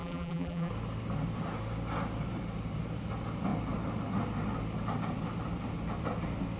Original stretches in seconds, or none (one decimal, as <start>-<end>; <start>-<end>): 0.7-6.6